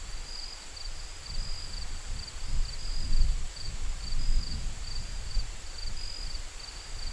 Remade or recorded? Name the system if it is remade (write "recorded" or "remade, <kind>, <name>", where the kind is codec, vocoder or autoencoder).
recorded